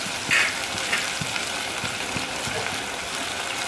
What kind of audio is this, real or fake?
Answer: real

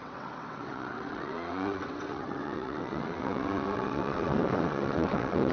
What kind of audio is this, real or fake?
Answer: fake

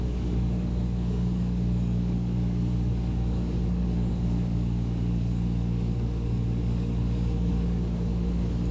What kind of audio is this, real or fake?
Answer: fake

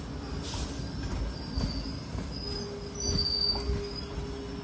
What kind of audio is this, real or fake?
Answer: real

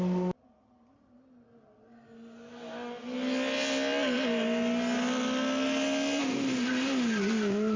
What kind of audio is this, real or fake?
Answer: real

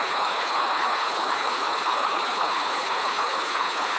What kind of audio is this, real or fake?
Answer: fake